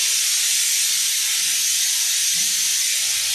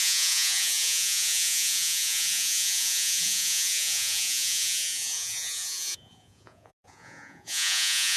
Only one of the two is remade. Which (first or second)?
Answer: second